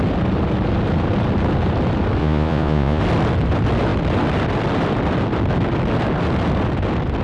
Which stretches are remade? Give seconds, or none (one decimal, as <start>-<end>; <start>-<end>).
2.2-3.0